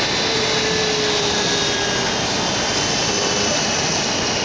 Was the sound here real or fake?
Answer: real